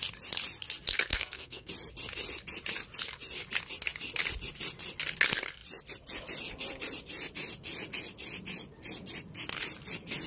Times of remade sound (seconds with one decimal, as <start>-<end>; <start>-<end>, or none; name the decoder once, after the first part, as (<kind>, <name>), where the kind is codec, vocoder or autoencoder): 1.1-1.7 (codec, SNAC)